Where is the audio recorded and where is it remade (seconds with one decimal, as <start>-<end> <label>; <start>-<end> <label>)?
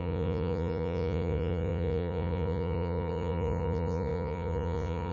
0.0-5.1 remade